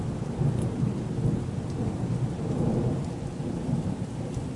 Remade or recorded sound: recorded